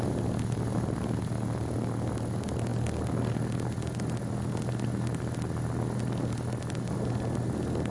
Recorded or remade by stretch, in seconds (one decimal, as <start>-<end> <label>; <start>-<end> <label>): 0.0-7.9 recorded